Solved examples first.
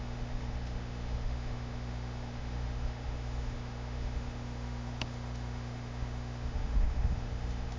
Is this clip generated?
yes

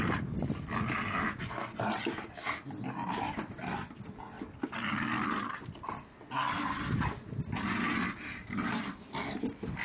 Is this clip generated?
no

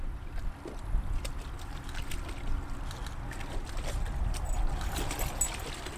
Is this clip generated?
no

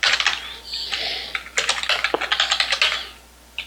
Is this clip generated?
no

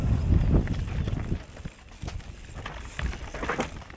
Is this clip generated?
no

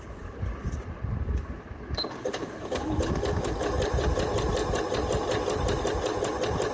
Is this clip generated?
no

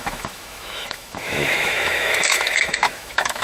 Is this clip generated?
yes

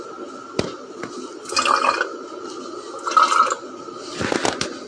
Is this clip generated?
no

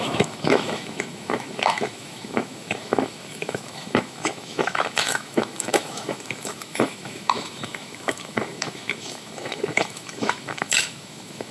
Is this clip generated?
yes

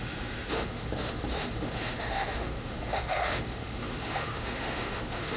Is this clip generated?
yes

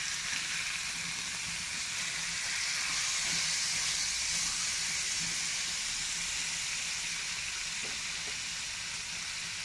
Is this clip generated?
no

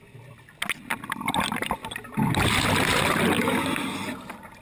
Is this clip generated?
no